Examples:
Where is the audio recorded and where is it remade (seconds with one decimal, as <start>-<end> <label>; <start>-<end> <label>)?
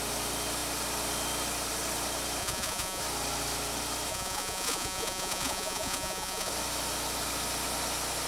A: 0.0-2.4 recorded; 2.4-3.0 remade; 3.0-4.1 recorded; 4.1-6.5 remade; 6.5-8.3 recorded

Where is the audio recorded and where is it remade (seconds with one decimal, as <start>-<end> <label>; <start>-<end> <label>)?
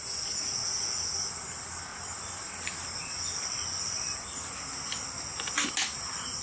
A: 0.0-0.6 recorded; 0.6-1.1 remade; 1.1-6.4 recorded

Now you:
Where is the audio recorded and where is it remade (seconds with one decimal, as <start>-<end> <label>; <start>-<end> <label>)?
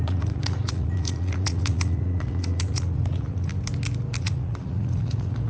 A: 0.0-3.5 remade; 3.5-4.2 recorded; 4.2-5.5 remade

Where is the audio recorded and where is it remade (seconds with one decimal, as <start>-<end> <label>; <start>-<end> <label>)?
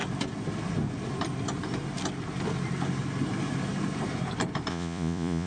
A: 0.0-4.7 recorded; 4.7-5.5 remade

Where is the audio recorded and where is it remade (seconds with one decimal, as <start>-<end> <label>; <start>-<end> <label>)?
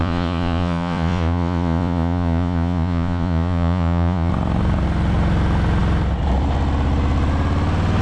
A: 0.0-4.3 remade; 4.3-8.0 recorded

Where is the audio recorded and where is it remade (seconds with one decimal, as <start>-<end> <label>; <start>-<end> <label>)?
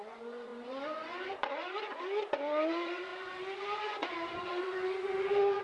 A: 0.0-5.6 remade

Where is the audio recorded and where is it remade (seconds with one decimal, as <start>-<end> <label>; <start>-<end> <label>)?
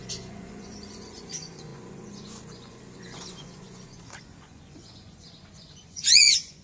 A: 0.0-6.6 remade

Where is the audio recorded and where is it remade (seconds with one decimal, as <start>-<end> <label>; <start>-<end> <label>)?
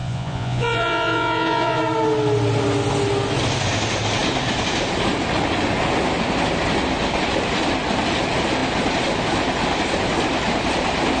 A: 0.0-1.8 remade; 1.8-11.2 recorded